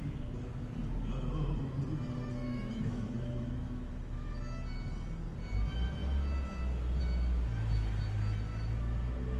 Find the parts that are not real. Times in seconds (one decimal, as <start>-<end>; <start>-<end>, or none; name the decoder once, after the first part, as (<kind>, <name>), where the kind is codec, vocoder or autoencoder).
2.4-4.3 (autoencoder, DAC-VAE)